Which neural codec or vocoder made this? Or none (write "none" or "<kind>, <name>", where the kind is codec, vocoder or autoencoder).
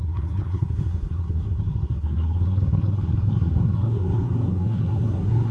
codec, SNAC